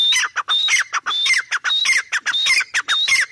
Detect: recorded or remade recorded